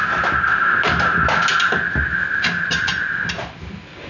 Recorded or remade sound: recorded